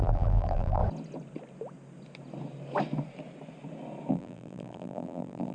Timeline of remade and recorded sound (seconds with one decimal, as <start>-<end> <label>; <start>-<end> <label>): 0.0-0.8 remade; 0.8-4.1 recorded; 4.1-5.5 remade